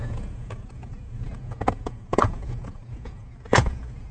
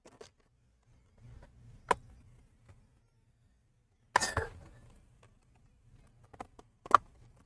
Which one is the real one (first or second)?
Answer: second